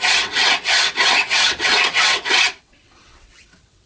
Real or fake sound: fake